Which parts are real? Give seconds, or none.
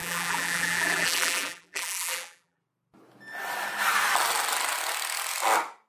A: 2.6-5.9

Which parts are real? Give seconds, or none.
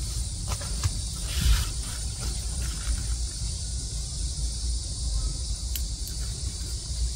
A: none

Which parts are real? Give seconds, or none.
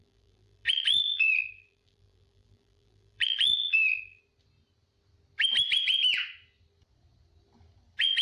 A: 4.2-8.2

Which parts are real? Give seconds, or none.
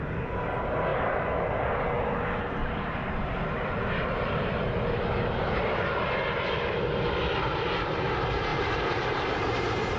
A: 0.0-2.6; 3.3-8.5; 9.4-10.0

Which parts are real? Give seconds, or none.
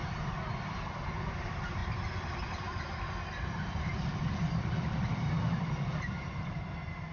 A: none